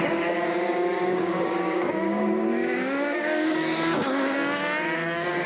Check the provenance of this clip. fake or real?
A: fake